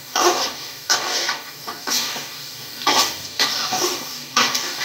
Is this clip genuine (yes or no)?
no